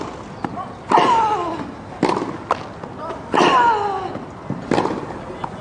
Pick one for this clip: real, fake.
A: real